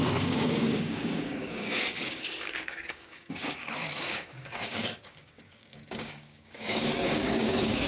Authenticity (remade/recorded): remade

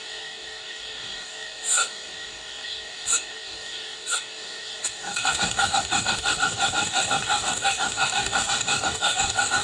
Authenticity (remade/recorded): remade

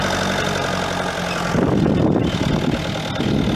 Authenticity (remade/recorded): recorded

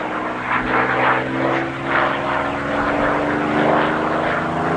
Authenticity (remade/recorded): recorded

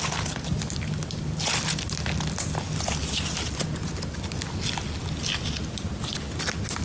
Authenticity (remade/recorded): recorded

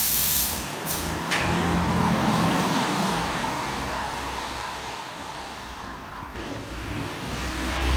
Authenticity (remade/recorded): remade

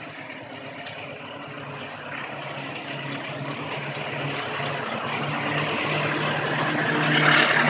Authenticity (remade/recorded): recorded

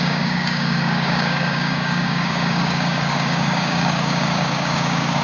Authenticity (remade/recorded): remade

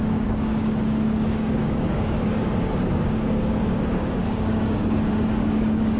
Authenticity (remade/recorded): remade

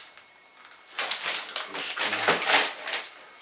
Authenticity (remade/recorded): recorded